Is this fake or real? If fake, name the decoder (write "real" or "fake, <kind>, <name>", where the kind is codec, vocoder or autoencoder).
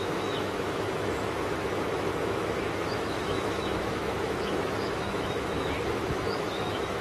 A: fake, autoencoder, DAC-VAE